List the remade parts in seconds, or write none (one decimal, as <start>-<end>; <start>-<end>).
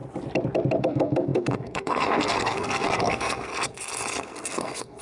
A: 0.8-3.5; 4.2-5.0